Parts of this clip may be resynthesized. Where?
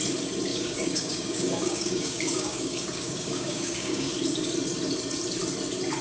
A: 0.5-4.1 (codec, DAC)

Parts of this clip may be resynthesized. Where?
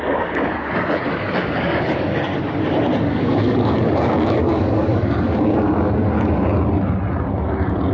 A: 0.0-2.3 (codec, DAC); 3.0-6.5; 7.3-7.9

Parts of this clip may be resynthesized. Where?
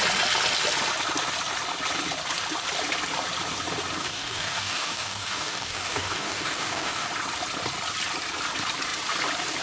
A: 4.0-7.1 (codec, DAC)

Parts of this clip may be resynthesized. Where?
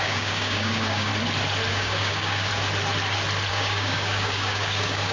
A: 0.0-1.1 (codec, DAC); 1.7-2.5; 3.5-5.1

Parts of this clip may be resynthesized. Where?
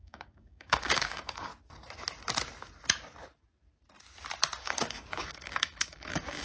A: 0.0-1.5 (codec, DAC); 4.6-6.4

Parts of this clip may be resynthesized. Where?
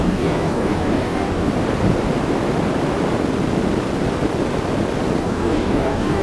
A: 0.0-1.5 (codec, DAC); 5.2-6.2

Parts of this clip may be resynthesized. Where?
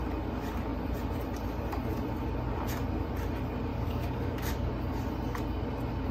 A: 3.7-4.7 (codec, DAC)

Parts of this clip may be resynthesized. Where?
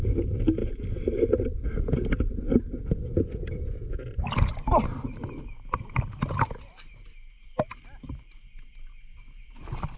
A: none